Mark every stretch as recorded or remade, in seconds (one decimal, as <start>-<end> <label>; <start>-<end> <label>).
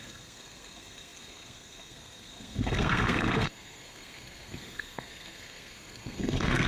0.0-6.7 remade